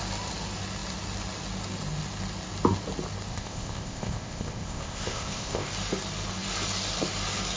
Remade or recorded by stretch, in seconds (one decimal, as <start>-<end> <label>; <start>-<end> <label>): 0.0-3.3 recorded; 3.3-5.7 remade; 5.7-7.6 recorded